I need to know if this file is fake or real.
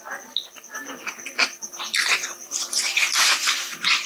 real